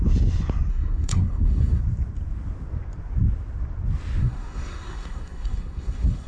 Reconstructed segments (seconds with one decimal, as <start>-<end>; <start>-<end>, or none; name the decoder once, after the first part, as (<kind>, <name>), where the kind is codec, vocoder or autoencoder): 0.7-1.8 (codec, SNAC); 4.2-6.3